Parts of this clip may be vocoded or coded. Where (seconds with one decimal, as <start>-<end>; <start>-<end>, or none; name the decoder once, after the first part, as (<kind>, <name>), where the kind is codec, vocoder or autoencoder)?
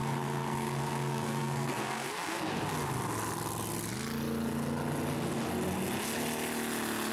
0.0-2.5 (codec, SNAC)